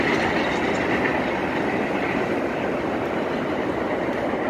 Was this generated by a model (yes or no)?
no